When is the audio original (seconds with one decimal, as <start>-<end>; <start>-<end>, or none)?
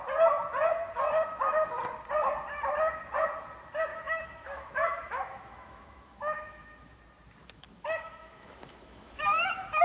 0.0-3.9; 7.0-7.4